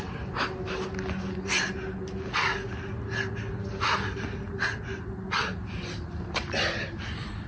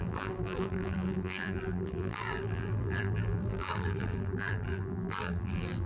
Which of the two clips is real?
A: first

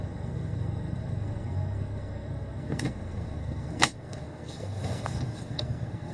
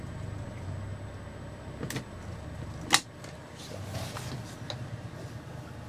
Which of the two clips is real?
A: second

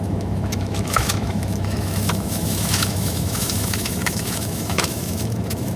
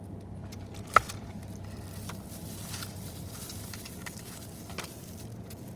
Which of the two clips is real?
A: second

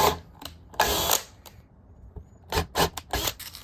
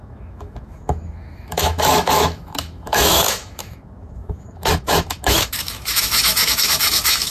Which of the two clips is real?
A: first